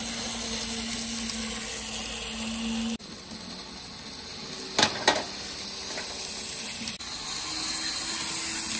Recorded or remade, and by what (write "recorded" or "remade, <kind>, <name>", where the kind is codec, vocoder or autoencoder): recorded